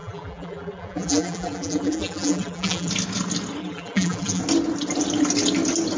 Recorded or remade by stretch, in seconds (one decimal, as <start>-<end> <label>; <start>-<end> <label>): 0.0-2.9 remade; 2.9-3.6 recorded; 3.6-4.4 remade; 4.4-6.0 recorded